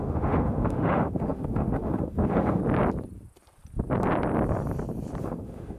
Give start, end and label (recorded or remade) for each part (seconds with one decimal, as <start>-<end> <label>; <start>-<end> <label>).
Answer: 0.0-2.6 remade; 2.6-5.2 recorded; 5.2-5.8 remade

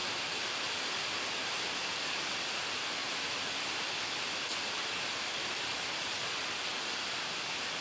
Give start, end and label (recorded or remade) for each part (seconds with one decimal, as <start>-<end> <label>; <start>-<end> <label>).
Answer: 0.0-1.0 remade; 1.0-5.7 recorded; 5.7-6.4 remade; 6.4-7.8 recorded